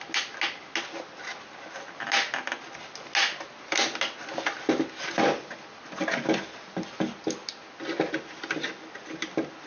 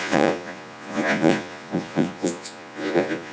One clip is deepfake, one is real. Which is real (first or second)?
first